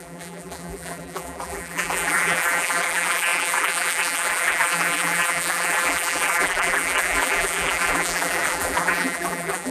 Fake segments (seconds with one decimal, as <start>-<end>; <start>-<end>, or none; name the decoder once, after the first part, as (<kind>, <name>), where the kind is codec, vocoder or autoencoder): 0.0-9.7 (vocoder, BigVGAN v2)